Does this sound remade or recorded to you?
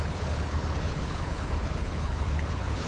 remade